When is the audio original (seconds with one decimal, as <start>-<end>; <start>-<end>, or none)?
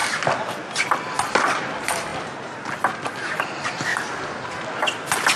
0.0-5.4